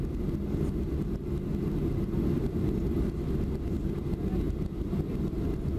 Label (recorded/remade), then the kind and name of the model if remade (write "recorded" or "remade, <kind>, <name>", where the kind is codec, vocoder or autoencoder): recorded